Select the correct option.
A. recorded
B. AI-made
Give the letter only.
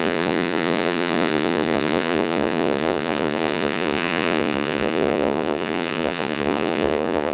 B